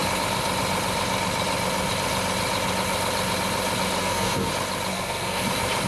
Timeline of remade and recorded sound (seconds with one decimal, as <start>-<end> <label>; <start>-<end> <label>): 0.0-4.0 recorded; 4.0-4.5 remade; 4.5-4.9 recorded; 4.9-5.4 remade; 5.4-5.9 recorded

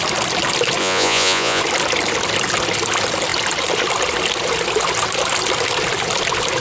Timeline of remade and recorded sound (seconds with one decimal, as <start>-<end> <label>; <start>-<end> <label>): 0.0-0.8 recorded; 0.8-1.6 remade; 1.6-6.6 recorded

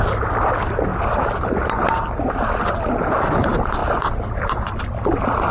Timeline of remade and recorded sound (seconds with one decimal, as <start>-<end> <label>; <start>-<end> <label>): 0.0-3.8 recorded; 3.8-4.5 remade; 4.5-5.5 recorded